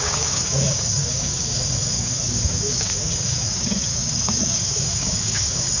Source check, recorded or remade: remade